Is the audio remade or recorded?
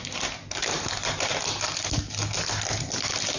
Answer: recorded